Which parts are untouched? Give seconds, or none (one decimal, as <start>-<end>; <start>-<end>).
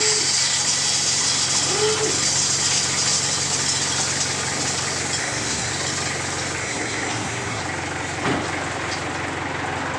0.0-5.2; 5.7-6.6; 7.6-10.0